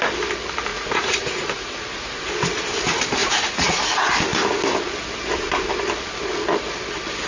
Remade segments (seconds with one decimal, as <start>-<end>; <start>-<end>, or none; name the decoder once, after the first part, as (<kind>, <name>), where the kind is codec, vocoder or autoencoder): 0.7-2.2 (vocoder, Vocos); 3.2-3.8